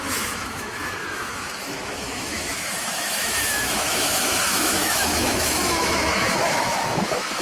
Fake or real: fake